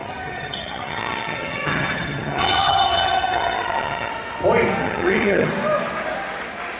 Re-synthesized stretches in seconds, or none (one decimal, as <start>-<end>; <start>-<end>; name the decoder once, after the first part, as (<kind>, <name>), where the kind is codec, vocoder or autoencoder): 0.0-4.1 (vocoder, HiFi-GAN); 4.8-5.5